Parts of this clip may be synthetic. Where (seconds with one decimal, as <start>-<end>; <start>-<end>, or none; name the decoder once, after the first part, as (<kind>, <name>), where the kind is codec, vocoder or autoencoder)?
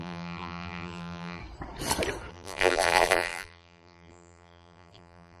0.0-1.4 (vocoder, BigVGAN v2); 2.3-5.4